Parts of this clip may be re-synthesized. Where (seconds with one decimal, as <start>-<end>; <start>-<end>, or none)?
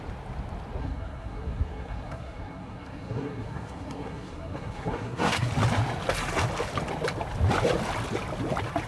0.8-5.5